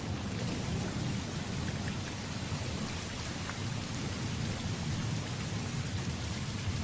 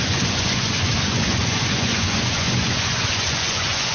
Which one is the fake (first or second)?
second